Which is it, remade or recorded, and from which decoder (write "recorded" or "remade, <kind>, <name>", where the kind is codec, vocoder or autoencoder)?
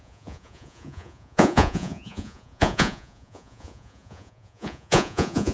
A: remade, vocoder, Vocos